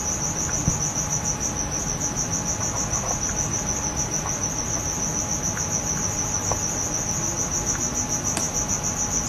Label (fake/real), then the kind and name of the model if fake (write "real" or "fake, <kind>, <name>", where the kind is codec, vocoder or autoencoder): real